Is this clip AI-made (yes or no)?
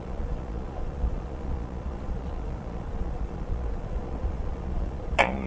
yes